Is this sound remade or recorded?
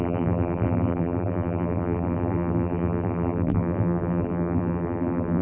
remade